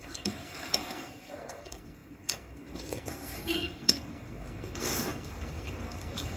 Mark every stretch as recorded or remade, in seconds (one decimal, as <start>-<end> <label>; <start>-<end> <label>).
0.0-6.4 remade

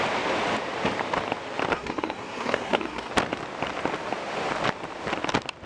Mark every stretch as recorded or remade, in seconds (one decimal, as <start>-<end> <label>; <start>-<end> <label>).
0.0-1.7 recorded; 1.7-3.1 remade; 3.1-5.7 recorded

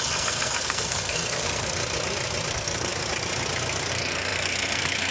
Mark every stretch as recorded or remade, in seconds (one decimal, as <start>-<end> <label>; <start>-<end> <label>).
0.0-1.8 remade; 1.8-2.5 recorded; 2.5-2.9 remade; 2.9-3.9 recorded; 3.9-5.1 remade

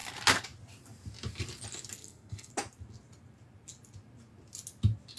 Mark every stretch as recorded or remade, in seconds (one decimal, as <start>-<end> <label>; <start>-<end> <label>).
0.0-2.0 recorded; 2.0-2.5 remade; 2.5-5.2 recorded